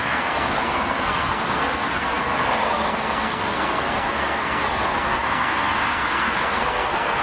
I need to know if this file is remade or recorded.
remade